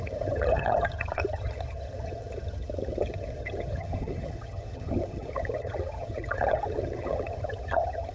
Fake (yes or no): yes